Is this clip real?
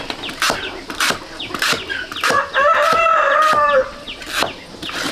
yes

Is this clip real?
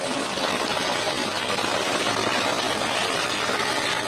yes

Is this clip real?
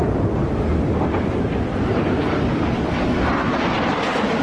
yes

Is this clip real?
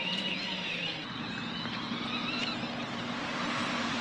yes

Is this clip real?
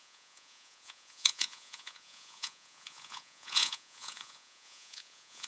no